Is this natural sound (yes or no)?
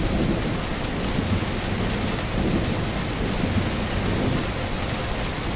yes